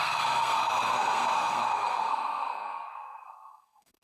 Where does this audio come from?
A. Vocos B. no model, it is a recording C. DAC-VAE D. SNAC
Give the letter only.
D